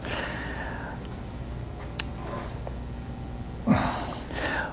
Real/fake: real